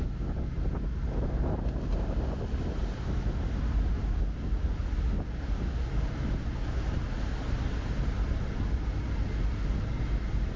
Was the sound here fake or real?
real